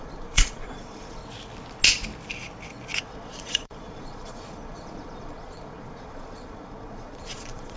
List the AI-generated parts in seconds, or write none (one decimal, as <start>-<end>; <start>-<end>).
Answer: 0.0-1.2; 3.0-7.8